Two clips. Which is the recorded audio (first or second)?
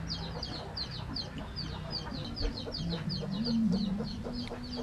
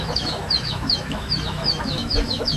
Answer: first